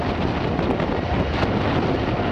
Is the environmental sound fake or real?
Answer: real